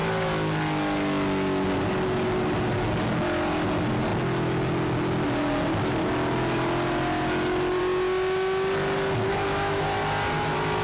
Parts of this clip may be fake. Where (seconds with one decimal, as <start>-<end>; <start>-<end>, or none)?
9.3-9.8